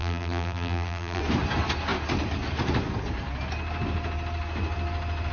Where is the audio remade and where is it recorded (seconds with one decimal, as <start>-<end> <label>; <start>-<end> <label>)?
0.0-1.2 remade; 1.2-5.3 recorded